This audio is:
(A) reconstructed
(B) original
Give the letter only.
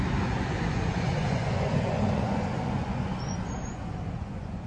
A